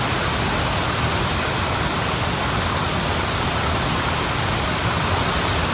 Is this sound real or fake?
real